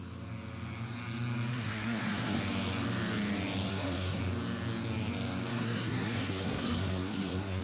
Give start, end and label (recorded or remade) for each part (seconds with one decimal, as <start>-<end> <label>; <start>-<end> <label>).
0.0-1.5 recorded; 1.5-2.4 remade; 2.4-3.7 recorded; 3.7-4.2 remade; 4.2-5.5 recorded; 5.5-7.6 remade